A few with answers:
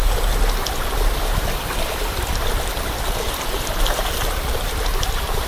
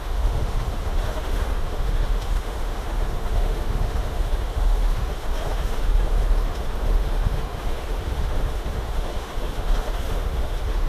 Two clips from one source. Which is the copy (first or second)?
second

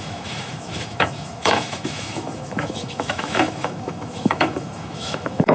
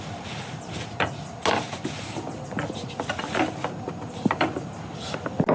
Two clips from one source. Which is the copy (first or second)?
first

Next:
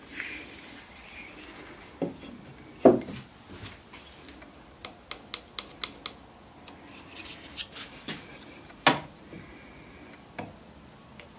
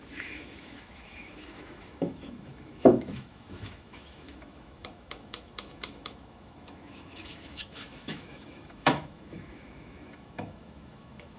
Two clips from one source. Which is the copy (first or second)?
second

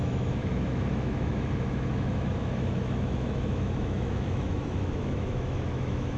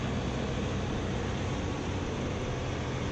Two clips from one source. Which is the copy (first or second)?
first